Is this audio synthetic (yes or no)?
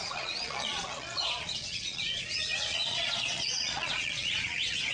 yes